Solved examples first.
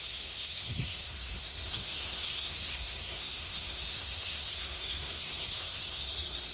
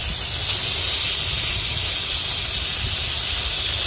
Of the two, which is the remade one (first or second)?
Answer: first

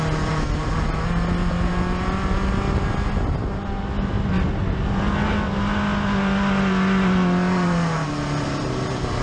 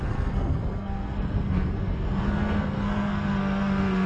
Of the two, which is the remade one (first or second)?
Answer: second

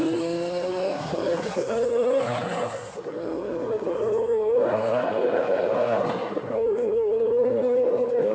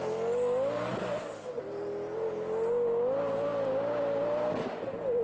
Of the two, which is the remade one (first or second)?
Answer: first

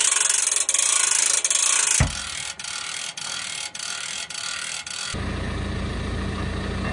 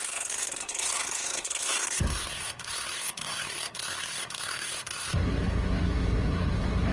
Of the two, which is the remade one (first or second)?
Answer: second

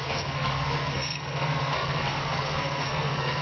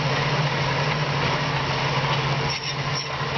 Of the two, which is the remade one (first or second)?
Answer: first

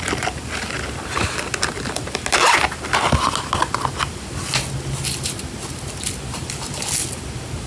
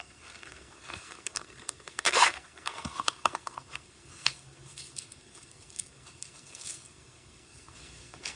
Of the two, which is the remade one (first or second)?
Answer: second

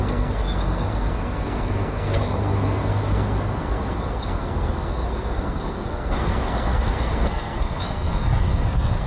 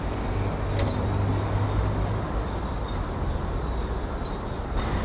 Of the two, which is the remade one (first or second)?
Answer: first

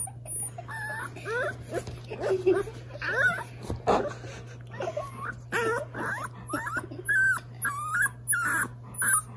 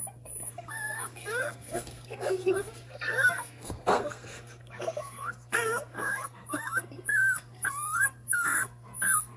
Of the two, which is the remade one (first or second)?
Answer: second